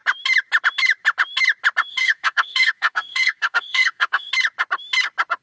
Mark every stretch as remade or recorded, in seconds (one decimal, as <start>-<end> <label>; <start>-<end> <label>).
0.0-1.9 recorded; 1.9-4.3 remade; 4.3-5.4 recorded